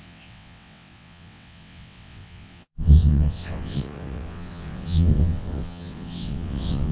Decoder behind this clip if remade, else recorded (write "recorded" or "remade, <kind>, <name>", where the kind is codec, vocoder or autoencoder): remade, vocoder, WaveNeXt